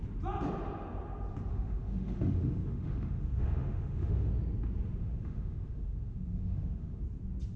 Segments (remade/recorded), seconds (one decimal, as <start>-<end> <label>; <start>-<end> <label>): 0.0-1.5 recorded; 1.5-4.3 remade; 4.3-5.0 recorded; 5.0-7.0 remade; 7.0-7.6 recorded

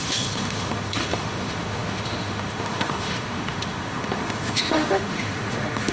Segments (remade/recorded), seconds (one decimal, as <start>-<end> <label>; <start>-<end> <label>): 0.0-5.9 remade

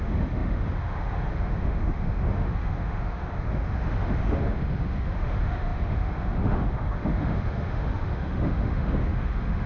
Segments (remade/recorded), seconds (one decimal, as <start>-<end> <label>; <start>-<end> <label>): 0.0-9.7 remade

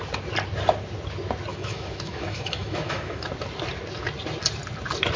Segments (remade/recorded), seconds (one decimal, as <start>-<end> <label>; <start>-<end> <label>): 0.0-1.5 recorded; 1.5-3.3 remade; 3.3-5.2 recorded

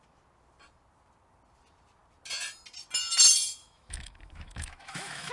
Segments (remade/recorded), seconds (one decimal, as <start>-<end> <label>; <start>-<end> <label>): 0.0-3.6 recorded; 3.6-5.3 remade

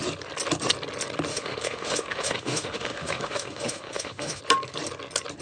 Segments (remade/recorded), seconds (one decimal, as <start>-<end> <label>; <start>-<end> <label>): 0.0-1.3 recorded; 1.3-4.4 remade; 4.4-5.4 recorded

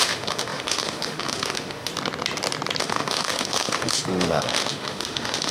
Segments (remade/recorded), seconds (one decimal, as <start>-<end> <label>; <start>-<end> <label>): 0.0-1.9 remade; 1.9-2.8 recorded; 2.8-5.5 remade